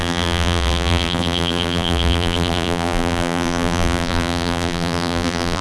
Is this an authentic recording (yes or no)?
no